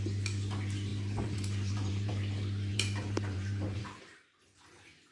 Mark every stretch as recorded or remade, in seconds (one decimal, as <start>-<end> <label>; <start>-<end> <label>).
0.0-0.9 recorded; 0.9-2.1 remade; 2.1-2.7 recorded; 2.7-3.8 remade; 3.8-5.1 recorded